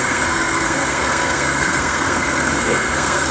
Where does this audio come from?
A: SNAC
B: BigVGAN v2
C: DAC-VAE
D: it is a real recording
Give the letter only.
A